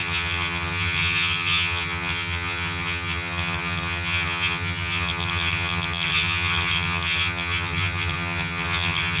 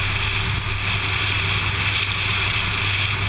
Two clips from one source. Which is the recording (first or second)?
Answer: second